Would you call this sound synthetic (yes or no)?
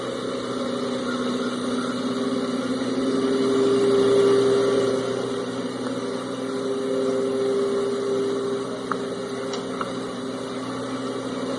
no